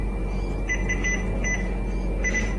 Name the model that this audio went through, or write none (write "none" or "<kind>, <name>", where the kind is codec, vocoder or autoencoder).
none